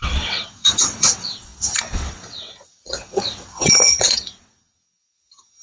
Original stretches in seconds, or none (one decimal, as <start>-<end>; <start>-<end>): none

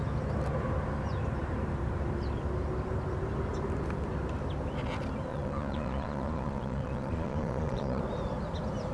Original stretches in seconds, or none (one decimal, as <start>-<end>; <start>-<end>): 0.0-5.3; 8.0-8.9

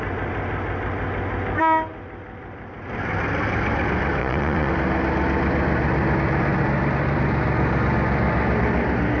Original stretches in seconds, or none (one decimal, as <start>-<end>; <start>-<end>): 0.0-4.2; 4.7-9.2

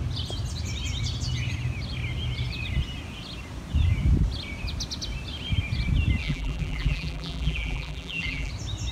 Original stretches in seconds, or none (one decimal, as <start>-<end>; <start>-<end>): 0.0-6.2; 8.5-8.9

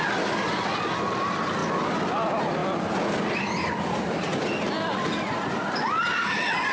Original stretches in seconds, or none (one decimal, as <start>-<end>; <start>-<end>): 0.0-6.7

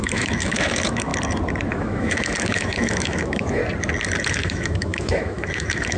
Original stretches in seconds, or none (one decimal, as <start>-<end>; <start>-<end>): 1.1-1.7; 3.6-4.3

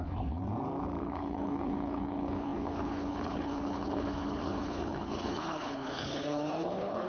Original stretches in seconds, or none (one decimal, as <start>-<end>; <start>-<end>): 0.4-1.0

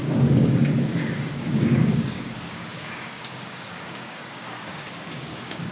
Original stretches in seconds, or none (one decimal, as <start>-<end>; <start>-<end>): none